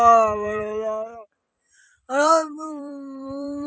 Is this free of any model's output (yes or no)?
no